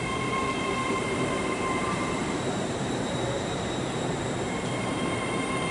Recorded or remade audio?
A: remade